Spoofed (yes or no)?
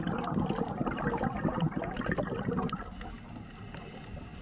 no